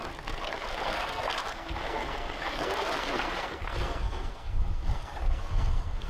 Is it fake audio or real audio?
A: fake